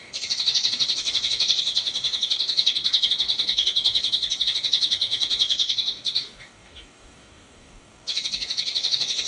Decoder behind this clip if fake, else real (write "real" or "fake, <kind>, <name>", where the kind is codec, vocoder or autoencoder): fake, codec, DAC